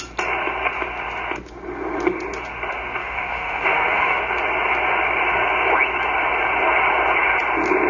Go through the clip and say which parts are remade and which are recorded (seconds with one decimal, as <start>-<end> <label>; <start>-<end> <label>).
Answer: 0.0-3.0 recorded; 3.0-4.2 remade; 4.2-7.9 recorded